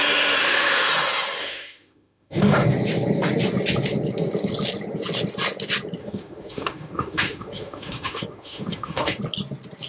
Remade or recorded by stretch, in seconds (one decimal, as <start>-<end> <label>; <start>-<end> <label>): 0.0-0.4 recorded; 0.4-0.9 remade; 0.9-1.4 recorded; 1.4-2.7 remade; 2.7-6.0 recorded; 6.0-9.2 remade; 9.2-9.9 recorded